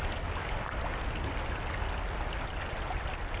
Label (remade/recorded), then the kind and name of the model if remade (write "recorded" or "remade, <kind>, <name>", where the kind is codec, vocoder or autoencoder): recorded